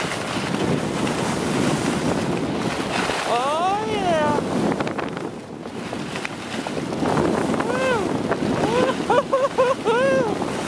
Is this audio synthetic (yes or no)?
no